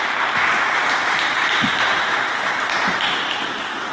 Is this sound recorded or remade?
recorded